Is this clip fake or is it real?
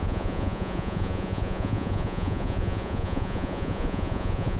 fake